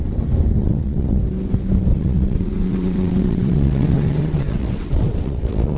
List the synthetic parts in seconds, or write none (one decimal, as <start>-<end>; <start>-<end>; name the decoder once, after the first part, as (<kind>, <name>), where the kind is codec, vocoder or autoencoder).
0.6-1.2 (vocoder, WaveNeXt); 1.9-5.8